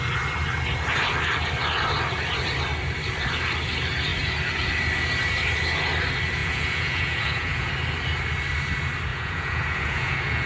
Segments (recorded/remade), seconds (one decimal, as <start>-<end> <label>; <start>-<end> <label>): 0.0-6.4 recorded; 6.4-7.7 remade; 7.7-9.1 recorded; 9.1-10.5 remade

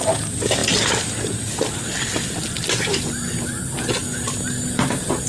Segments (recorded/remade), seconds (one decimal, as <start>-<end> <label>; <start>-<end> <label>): 0.0-5.3 recorded

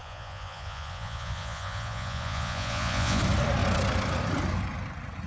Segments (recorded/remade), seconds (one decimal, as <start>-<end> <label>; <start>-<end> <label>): 0.0-3.2 remade; 3.2-5.3 recorded

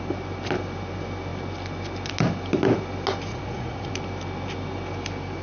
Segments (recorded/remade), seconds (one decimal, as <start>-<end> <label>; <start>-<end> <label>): 0.0-3.3 recorded; 3.3-3.9 remade; 3.9-5.4 recorded

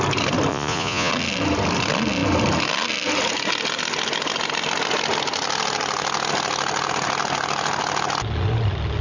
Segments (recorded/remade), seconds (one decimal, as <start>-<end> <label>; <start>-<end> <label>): 0.0-0.5 recorded; 0.5-1.1 remade; 1.1-9.0 recorded

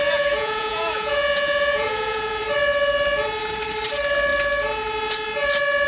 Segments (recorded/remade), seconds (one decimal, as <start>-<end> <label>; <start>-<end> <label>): 0.0-2.4 remade; 2.4-5.9 recorded